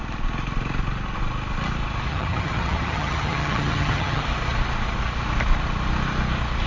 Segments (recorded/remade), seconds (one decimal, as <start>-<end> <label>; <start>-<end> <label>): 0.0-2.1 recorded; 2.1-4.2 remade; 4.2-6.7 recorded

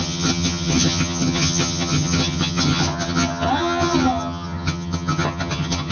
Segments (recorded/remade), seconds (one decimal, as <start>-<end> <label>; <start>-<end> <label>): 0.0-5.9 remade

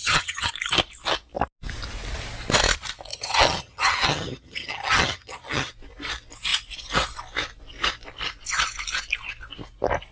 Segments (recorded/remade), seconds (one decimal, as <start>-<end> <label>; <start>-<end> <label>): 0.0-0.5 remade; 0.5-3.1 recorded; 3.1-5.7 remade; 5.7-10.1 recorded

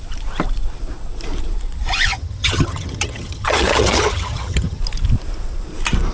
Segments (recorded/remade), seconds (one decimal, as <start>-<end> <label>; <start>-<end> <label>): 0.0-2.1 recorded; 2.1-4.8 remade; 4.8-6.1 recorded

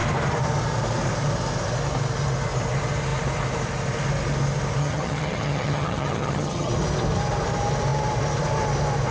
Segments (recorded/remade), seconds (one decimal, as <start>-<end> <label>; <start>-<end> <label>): 0.0-4.8 recorded; 4.8-6.7 remade; 6.7-9.1 recorded

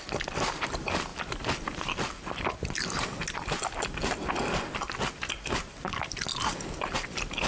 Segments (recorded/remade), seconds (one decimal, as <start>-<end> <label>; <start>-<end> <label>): 0.0-7.5 recorded